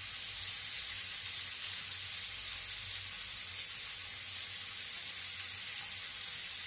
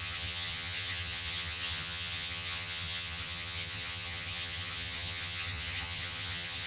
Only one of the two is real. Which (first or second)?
first